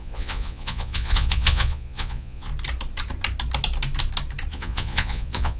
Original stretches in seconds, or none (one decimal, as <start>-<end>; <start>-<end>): 2.5-4.5